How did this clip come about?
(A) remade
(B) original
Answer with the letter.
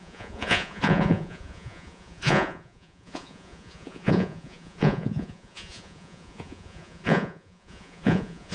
A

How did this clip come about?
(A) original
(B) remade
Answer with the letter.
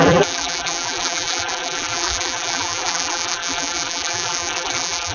B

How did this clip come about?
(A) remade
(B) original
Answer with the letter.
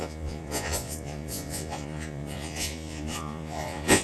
A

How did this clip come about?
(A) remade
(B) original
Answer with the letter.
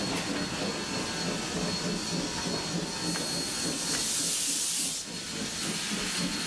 B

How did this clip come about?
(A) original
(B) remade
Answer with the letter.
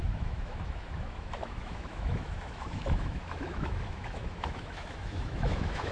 B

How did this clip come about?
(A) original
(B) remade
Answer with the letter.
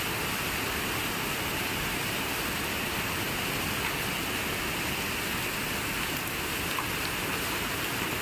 A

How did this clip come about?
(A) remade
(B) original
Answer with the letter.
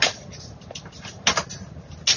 B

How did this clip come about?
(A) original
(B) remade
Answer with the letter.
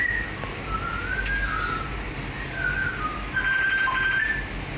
A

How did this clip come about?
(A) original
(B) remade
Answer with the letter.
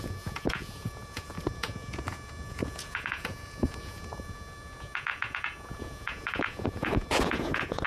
B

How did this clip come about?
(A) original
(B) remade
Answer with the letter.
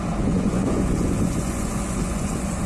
B